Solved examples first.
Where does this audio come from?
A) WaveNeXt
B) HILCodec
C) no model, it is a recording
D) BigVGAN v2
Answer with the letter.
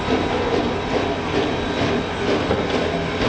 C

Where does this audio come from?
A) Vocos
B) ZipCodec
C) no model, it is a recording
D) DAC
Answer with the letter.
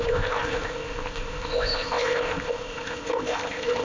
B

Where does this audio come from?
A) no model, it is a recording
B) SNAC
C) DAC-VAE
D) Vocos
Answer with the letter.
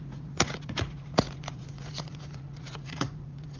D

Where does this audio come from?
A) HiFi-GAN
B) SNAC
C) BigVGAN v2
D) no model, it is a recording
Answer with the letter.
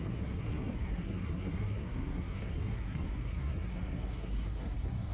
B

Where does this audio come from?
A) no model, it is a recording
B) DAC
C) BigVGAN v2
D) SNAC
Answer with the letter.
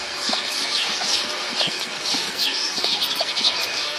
D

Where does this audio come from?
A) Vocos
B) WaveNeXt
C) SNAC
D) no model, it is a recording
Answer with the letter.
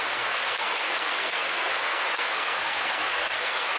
C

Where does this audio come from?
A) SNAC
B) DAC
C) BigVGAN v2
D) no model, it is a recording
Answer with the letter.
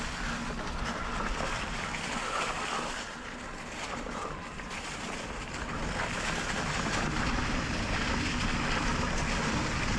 D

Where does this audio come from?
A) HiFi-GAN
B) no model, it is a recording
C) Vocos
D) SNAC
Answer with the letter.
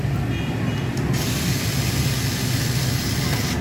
B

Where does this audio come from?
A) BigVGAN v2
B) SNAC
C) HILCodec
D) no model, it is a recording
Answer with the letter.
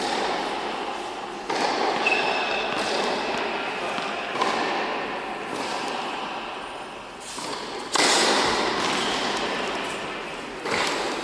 D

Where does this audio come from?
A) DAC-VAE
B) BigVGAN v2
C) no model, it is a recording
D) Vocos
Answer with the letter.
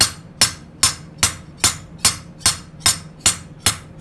C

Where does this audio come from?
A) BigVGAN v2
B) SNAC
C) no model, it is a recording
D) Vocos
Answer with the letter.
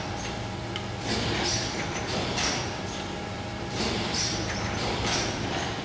A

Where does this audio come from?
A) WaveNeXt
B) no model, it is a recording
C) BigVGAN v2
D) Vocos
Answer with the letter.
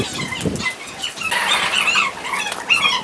B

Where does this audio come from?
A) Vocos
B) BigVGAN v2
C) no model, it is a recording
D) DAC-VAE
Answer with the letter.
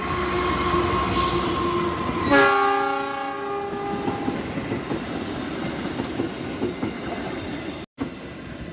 C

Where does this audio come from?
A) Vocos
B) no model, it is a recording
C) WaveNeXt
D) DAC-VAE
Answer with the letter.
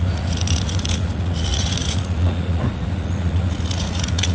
A